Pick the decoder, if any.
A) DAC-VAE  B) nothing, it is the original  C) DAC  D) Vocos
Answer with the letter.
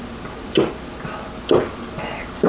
B